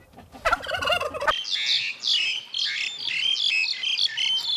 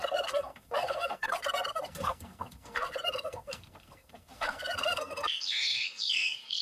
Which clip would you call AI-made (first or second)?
second